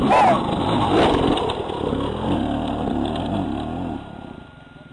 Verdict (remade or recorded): recorded